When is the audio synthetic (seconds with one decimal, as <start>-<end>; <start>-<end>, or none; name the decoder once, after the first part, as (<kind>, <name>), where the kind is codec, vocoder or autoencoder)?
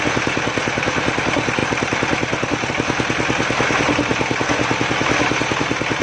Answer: none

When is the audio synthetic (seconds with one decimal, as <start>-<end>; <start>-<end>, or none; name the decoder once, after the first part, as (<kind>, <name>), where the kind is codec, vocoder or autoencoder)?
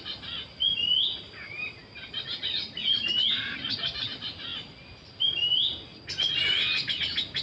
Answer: none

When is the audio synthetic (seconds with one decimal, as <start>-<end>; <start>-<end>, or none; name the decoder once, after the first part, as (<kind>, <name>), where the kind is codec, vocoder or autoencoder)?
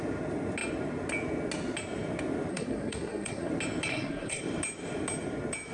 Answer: 2.5-3.5 (codec, SNAC); 3.9-4.4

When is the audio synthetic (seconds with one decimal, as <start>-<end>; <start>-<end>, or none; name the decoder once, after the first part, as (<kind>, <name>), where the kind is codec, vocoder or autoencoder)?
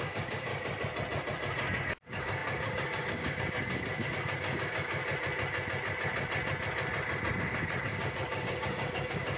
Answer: 0.0-0.5 (codec, DAC); 2.0-5.0; 7.4-9.4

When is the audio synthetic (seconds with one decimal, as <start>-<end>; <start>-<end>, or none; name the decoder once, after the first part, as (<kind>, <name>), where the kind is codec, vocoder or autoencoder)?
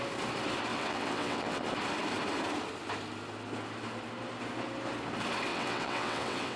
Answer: 0.7-1.6 (vocoder, WaveNeXt); 5.5-6.6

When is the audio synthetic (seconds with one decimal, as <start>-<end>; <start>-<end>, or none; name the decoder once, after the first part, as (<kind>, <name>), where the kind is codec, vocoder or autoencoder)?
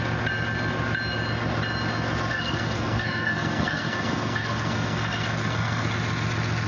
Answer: 2.3-5.9 (codec, SNAC)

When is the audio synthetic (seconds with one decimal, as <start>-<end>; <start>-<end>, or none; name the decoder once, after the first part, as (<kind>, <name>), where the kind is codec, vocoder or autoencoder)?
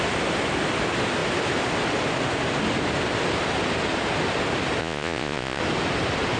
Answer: 4.8-5.6 (vocoder, Vocos)